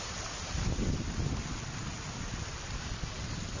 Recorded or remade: recorded